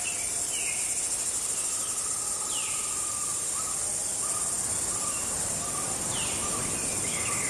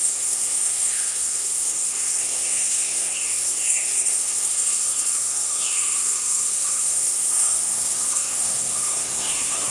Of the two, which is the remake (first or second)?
second